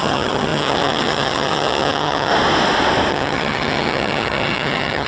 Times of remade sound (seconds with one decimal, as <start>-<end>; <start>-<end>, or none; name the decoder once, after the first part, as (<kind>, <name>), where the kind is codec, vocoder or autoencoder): 0.0-2.3 (vocoder, HiFi-GAN); 3.1-5.1